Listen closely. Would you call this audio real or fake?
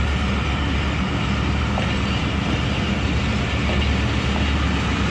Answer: real